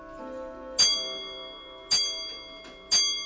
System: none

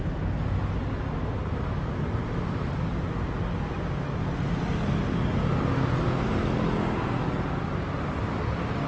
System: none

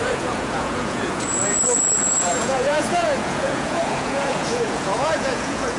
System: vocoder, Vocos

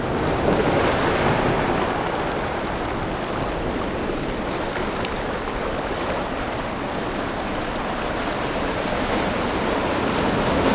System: none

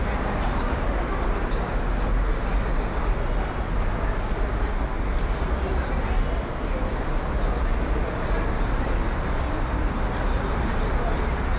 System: none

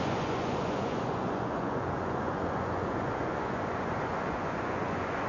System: vocoder, Vocos